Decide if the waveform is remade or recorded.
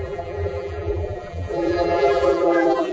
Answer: remade